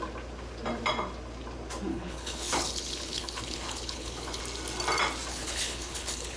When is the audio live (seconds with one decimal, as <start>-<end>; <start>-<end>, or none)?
0.0-1.9; 4.4-5.3